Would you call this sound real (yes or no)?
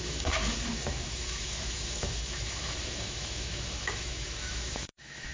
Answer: no